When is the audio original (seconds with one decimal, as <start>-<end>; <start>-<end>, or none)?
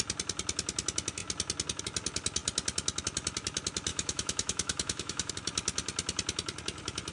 0.0-3.9; 5.3-7.1